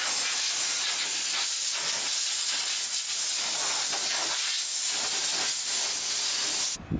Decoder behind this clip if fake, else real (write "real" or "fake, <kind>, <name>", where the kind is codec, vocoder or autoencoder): real